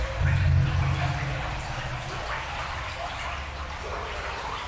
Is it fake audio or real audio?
real